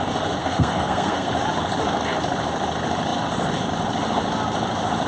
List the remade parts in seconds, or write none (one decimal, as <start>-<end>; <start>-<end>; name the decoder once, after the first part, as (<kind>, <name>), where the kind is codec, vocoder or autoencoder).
0.4-1.3 (codec, SNAC)